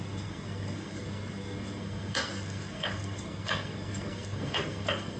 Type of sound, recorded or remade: remade